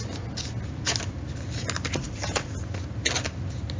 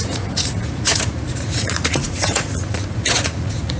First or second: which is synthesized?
second